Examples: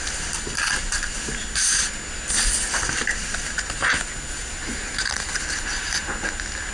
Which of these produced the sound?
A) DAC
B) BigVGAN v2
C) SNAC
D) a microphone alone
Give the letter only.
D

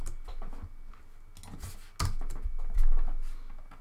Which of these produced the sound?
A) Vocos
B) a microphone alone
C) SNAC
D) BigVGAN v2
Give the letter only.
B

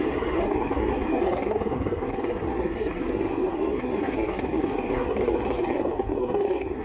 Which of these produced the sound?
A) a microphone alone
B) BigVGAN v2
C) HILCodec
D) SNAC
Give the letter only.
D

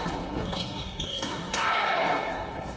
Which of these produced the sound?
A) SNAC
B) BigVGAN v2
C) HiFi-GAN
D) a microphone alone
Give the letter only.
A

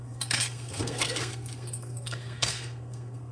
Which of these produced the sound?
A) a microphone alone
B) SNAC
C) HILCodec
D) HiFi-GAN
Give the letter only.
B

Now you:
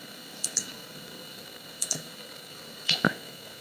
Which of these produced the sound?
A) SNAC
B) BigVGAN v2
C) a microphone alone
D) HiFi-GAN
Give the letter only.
A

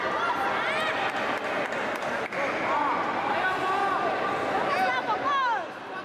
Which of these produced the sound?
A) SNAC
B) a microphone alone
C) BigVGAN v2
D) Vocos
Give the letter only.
B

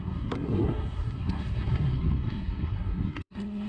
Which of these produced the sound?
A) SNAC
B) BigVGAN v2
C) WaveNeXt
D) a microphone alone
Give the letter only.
A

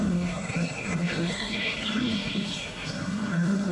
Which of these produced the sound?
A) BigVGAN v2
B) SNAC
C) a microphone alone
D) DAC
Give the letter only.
B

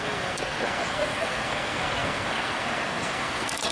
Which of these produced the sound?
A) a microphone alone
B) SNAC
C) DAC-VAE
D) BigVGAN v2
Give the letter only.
B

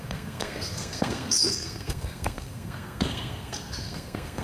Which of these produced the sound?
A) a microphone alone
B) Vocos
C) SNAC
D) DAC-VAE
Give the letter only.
C